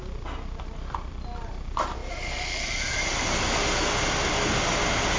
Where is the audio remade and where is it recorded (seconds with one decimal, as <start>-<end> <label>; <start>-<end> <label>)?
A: 0.0-5.2 recorded